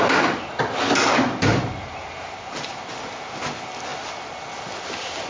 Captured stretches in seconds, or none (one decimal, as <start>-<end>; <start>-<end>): 0.0-1.5; 2.8-5.3